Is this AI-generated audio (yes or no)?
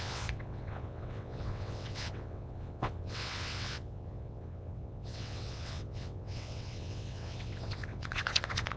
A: yes